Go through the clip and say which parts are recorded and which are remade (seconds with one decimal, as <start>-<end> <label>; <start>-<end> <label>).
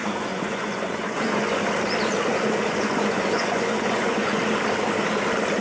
0.0-1.6 remade; 1.6-2.3 recorded; 2.3-4.4 remade; 4.4-5.6 recorded